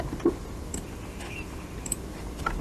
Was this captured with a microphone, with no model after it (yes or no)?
yes